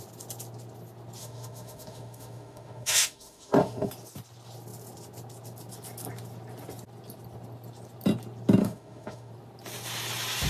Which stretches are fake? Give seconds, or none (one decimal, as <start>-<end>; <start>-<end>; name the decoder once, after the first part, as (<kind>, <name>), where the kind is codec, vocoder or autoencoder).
1.2-3.9 (autoencoder, DAC-VAE); 8.6-9.3